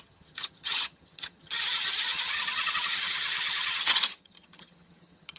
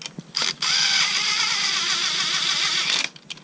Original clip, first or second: second